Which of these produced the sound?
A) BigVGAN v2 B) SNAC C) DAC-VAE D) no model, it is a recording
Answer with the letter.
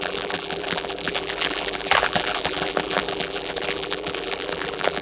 A